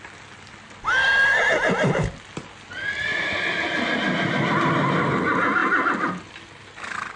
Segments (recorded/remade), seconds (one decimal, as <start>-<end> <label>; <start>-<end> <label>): 0.0-7.2 recorded